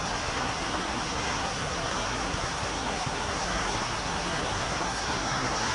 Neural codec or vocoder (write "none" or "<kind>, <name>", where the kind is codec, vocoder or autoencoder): codec, SNAC